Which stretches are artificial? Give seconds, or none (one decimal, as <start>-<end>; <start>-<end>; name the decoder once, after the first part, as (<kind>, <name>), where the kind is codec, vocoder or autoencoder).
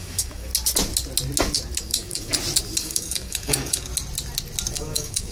0.0-0.5 (codec, DAC); 1.8-2.3; 2.8-3.9; 4.7-5.3